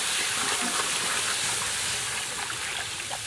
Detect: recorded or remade recorded